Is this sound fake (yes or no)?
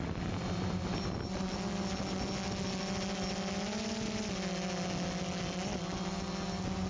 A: no